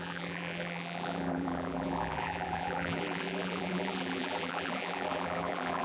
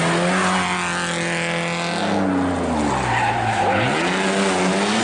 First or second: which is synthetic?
first